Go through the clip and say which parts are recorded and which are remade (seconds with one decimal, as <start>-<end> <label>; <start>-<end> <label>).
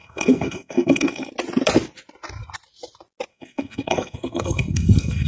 0.0-1.3 remade; 1.3-3.3 recorded; 3.3-5.3 remade